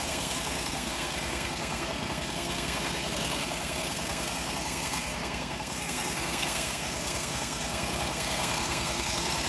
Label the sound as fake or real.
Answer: fake